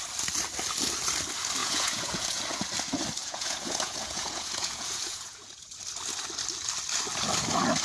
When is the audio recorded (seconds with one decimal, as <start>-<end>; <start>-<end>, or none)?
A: 0.0-1.6; 2.4-3.2; 5.7-7.8

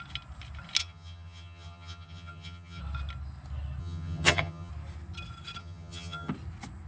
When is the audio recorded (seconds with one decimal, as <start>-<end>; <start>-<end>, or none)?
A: 0.0-0.8; 2.8-3.8; 4.7-5.6; 6.3-6.9

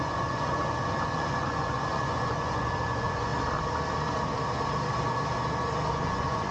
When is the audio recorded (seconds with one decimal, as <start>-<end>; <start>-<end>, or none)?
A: 3.3-5.9

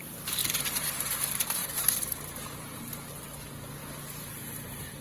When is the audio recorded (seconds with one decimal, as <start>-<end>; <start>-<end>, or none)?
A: 0.0-0.4; 1.0-1.6; 2.8-5.0

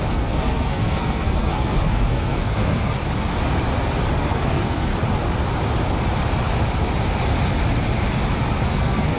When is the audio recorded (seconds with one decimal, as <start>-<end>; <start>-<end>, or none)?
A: 3.0-4.2; 4.9-8.7